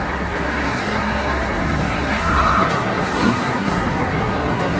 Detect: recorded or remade remade